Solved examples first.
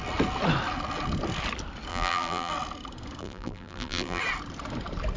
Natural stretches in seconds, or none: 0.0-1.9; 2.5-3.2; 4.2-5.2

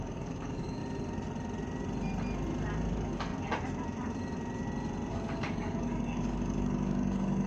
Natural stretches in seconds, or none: 0.8-2.9; 3.3-5.1

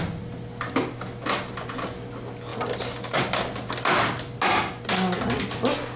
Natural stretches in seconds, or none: 0.0-6.0